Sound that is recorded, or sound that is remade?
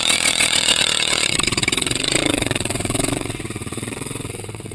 remade